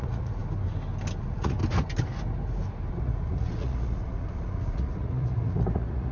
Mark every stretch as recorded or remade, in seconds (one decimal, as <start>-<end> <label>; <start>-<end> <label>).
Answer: 0.0-0.4 remade; 0.4-1.2 recorded; 1.2-1.6 remade; 1.6-2.9 recorded; 2.9-6.1 remade